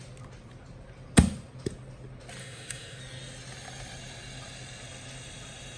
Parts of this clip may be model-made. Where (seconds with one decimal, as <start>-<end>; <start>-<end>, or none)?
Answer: 2.4-3.0